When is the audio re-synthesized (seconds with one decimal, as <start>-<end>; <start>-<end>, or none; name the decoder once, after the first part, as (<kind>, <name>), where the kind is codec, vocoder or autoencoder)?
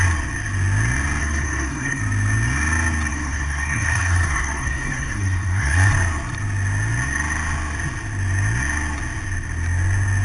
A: 1.2-2.0 (codec, SNAC); 3.1-5.9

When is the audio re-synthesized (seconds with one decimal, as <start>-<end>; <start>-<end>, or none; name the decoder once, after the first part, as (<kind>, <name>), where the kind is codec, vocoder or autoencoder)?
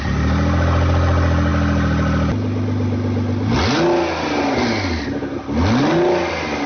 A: none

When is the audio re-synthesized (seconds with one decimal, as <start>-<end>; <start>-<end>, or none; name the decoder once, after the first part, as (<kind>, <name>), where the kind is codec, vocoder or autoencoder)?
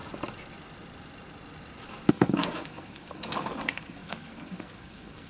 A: 2.1-5.3 (codec, SNAC)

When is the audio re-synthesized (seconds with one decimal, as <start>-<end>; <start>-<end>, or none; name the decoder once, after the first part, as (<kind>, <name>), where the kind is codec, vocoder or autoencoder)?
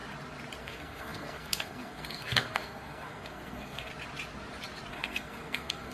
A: 0.6-3.9 (codec, SNAC); 4.9-5.9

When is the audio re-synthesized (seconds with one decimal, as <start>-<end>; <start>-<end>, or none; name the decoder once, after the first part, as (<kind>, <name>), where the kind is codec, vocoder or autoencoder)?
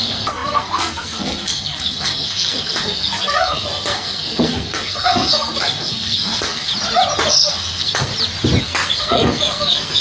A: 0.0-6.7 (codec, SNAC); 7.3-8.1; 8.6-10.0